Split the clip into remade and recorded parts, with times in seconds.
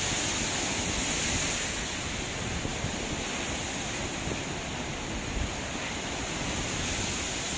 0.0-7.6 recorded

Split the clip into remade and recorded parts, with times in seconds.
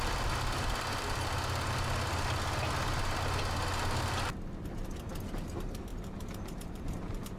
0.0-5.9 recorded; 5.9-7.4 remade